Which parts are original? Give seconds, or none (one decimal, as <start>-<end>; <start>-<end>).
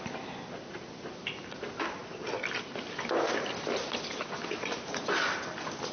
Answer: 0.0-5.9